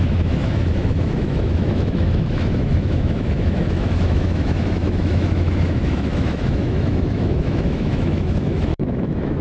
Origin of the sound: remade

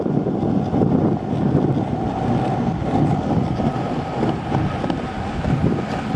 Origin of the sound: recorded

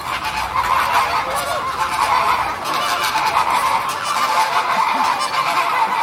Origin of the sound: recorded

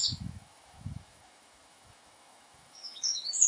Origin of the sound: remade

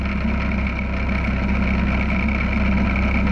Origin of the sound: recorded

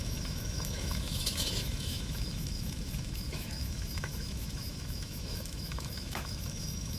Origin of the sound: remade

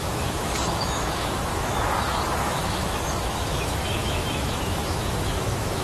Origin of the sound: remade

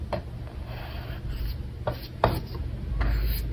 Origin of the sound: recorded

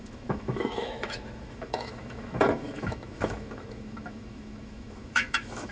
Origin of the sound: remade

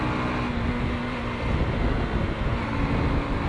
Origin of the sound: recorded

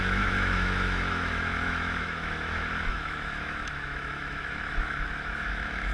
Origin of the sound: remade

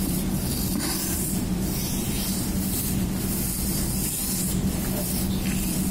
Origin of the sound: recorded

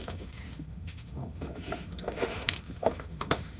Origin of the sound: remade